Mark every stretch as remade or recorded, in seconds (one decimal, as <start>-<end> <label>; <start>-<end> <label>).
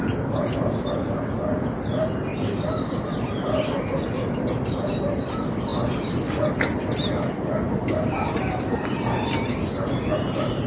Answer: 0.0-10.7 recorded